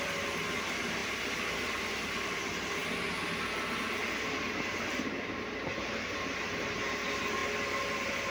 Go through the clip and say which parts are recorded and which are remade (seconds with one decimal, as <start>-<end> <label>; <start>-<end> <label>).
0.0-1.0 recorded; 1.0-2.3 remade; 2.3-7.4 recorded; 7.4-8.3 remade